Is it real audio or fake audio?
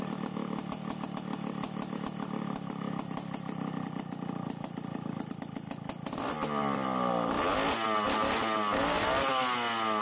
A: real